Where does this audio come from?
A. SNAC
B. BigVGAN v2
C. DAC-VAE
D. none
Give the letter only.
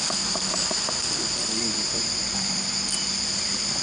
D